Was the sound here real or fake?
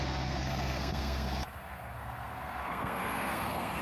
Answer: fake